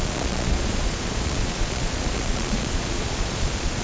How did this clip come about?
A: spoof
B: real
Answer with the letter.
A